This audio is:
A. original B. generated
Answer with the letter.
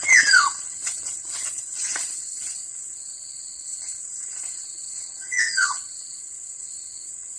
B